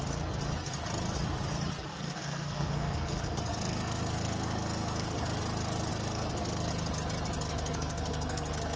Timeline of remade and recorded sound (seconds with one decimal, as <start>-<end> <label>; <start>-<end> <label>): 0.0-1.9 recorded; 1.9-5.4 remade; 5.4-5.9 recorded; 5.9-6.7 remade; 6.7-7.5 recorded; 7.5-8.8 remade